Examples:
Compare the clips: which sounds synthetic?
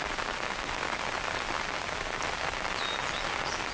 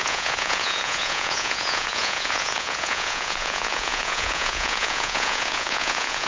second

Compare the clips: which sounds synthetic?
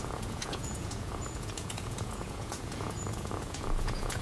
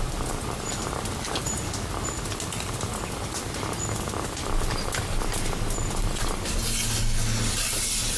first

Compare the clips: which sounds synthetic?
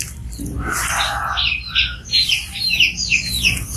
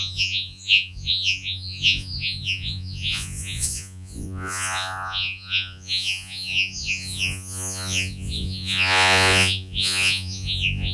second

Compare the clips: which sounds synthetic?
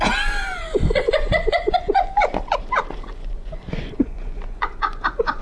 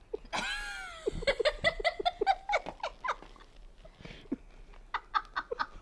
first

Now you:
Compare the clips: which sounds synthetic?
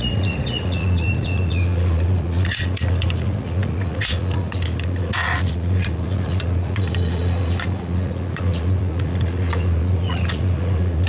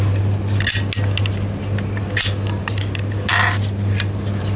first